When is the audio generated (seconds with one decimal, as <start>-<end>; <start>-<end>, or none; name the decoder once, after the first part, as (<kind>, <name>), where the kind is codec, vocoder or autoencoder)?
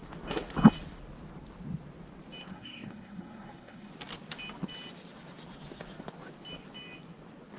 2.5-3.9 (codec, SNAC)